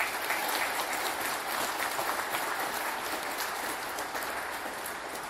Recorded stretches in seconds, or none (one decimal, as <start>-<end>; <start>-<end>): 0.0-5.3